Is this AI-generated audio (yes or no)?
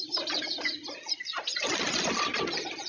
no